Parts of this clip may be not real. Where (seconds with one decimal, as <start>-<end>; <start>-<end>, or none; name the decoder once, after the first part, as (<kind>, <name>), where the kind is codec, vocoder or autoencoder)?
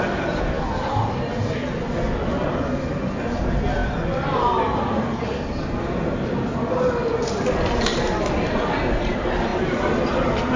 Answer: none